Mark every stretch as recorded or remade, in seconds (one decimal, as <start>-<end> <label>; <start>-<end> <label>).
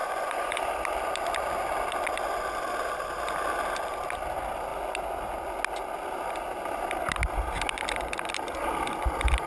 0.0-0.6 remade; 0.6-9.5 recorded